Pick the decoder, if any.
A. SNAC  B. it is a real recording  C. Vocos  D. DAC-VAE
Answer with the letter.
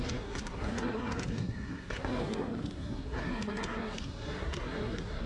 A